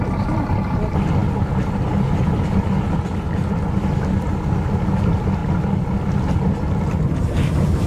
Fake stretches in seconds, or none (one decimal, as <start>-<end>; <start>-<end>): none